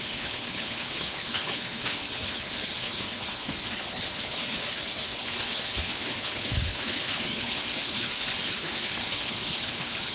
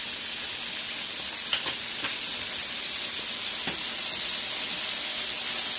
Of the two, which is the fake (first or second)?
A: first